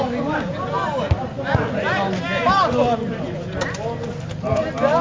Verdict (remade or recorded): recorded